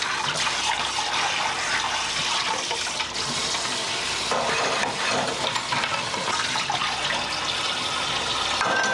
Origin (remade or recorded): recorded